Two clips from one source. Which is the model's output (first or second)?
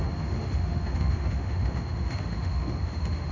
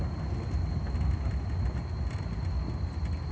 first